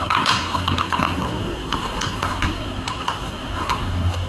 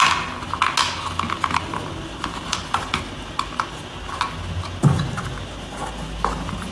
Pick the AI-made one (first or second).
first